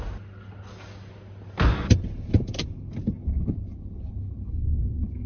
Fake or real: real